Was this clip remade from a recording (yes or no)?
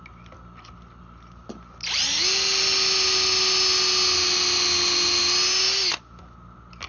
no